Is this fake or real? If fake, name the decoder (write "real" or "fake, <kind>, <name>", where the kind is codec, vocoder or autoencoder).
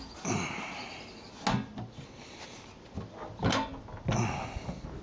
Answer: real